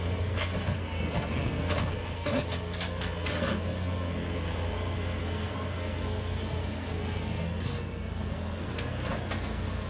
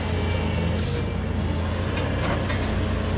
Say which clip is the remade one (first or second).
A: first